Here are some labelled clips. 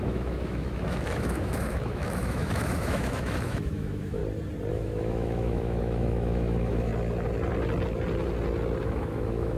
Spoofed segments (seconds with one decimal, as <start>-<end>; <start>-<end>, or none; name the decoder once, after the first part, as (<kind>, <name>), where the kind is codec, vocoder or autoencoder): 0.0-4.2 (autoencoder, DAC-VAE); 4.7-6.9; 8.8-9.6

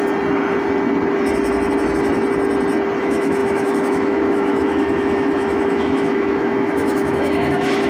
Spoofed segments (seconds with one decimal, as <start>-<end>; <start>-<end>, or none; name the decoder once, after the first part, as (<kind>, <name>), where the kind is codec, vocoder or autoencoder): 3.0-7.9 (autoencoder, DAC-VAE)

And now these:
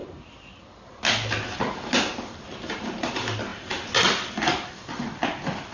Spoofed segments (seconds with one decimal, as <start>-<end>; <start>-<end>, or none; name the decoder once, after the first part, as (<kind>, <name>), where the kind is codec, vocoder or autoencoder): none

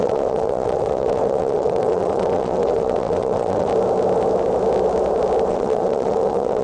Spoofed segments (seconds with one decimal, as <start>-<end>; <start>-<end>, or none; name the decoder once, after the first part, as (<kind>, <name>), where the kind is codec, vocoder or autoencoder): 0.0-3.7 (vocoder, WaveNeXt); 5.5-6.6

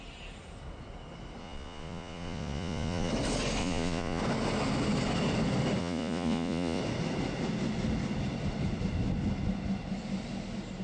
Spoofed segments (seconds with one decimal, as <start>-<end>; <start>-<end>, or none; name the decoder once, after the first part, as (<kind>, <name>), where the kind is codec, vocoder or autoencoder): 1.4-3.1 (vocoder, Vocos); 3.6-4.2; 5.8-6.8